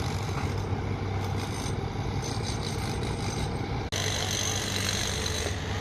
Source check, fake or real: real